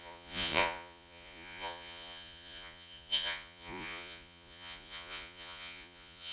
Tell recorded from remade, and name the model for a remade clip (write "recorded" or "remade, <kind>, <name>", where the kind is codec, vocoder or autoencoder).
remade, vocoder, Vocos